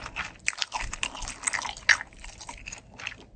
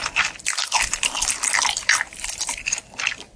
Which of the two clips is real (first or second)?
first